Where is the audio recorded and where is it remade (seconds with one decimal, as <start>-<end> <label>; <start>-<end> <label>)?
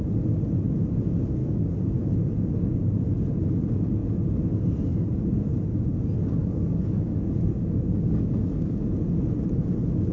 0.0-1.4 recorded; 1.4-2.1 remade; 2.1-6.4 recorded; 6.4-8.9 remade; 8.9-10.1 recorded